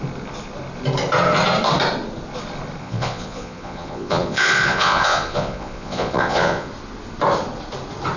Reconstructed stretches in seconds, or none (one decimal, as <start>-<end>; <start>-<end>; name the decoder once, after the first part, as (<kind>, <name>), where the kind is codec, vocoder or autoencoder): 2.8-6.7 (vocoder, Vocos)